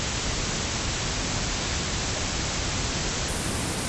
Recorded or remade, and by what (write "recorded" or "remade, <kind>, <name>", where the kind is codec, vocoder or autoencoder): recorded